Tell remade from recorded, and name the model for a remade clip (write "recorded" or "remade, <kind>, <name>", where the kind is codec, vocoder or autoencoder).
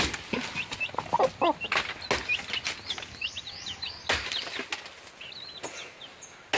recorded